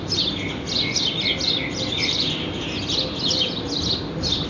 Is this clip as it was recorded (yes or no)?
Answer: yes